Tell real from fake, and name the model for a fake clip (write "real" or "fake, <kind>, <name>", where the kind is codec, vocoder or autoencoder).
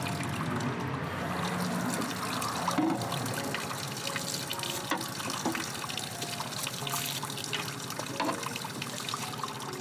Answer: real